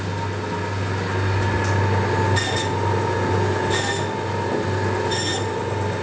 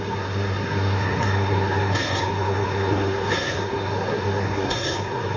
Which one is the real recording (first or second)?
first